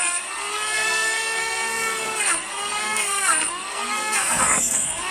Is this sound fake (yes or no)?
yes